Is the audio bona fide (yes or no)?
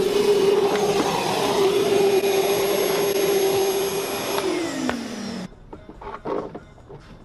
yes